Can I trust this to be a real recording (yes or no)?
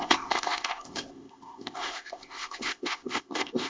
no